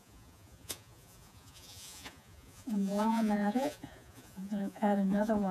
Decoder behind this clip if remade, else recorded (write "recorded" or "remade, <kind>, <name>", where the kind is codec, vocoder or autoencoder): remade, vocoder, Vocos